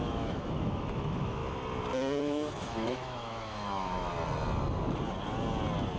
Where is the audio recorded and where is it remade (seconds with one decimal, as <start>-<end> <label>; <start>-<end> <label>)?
0.0-1.4 remade; 1.4-2.2 recorded; 2.2-4.1 remade; 4.1-6.0 recorded